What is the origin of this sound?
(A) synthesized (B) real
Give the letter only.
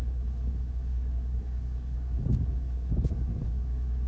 A